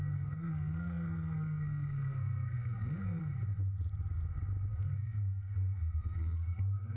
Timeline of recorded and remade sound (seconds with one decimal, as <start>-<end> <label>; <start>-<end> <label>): 0.0-3.2 remade; 3.2-4.7 recorded; 4.7-7.0 remade